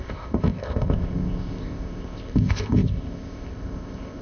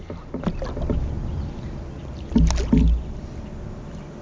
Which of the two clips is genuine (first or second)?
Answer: second